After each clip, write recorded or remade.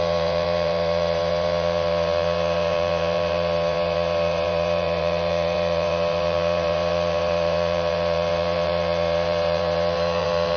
remade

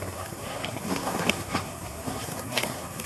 remade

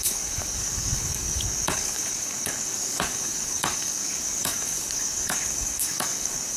remade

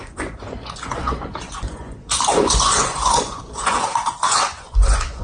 remade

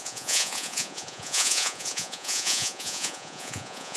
remade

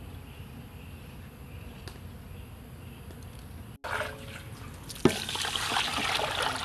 recorded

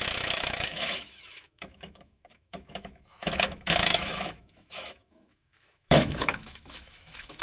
remade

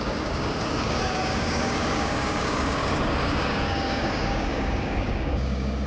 remade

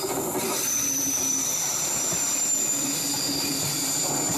recorded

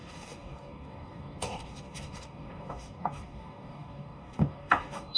remade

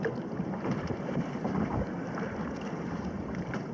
remade